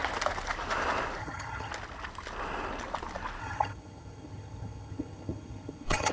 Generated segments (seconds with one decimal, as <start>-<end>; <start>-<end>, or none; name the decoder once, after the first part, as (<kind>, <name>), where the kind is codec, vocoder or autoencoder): 1.2-1.7 (vocoder, HiFi-GAN); 3.4-6.1